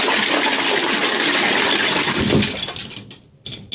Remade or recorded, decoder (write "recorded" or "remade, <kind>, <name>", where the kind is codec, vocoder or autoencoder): recorded